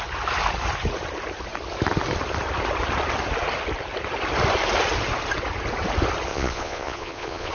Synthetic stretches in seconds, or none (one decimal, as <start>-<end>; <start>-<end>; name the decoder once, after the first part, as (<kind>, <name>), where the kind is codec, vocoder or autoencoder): 6.3-7.5 (vocoder, Vocos)